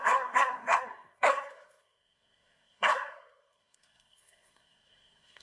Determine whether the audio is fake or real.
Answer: fake